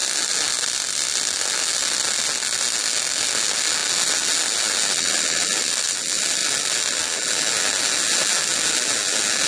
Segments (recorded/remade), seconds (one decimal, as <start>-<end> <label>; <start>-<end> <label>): 0.0-9.5 recorded